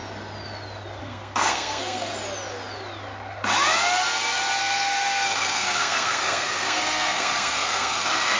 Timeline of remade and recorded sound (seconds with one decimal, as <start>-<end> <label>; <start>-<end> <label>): 0.0-1.0 recorded; 1.0-2.1 remade; 2.1-4.6 recorded; 4.6-8.4 remade